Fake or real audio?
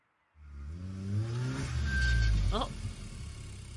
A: real